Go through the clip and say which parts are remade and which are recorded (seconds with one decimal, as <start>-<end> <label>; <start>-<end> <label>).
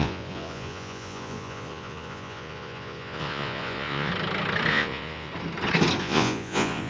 0.0-4.1 remade; 4.1-4.7 recorded; 4.7-5.3 remade; 5.3-6.0 recorded; 6.0-6.9 remade